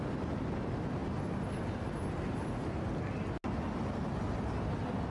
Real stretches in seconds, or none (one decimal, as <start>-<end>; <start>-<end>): 0.0-5.1